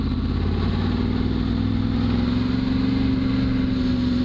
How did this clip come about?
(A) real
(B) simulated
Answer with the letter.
A